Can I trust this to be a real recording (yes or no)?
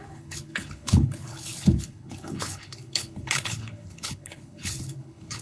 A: no